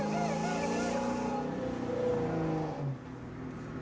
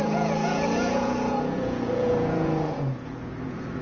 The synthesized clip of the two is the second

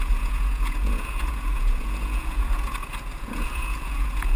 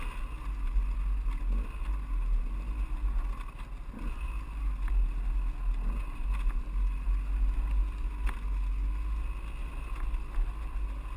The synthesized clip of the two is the first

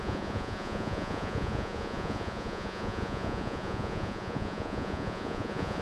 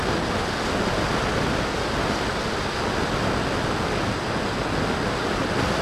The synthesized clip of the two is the first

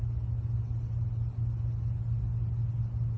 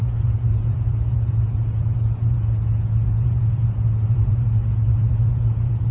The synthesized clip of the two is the second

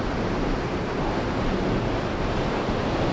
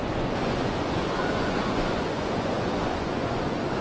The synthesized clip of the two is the second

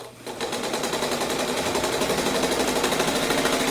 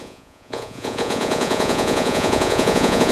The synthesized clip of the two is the second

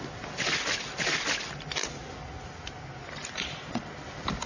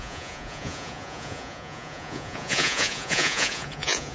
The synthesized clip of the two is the second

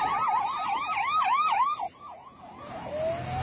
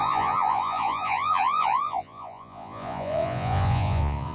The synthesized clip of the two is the second